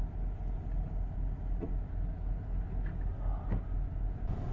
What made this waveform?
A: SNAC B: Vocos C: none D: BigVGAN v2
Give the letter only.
C